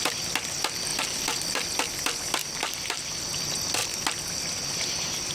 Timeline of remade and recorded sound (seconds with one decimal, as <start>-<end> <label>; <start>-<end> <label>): 0.0-0.9 recorded; 0.9-1.8 remade; 1.8-2.4 recorded; 2.4-3.1 remade; 3.1-5.3 recorded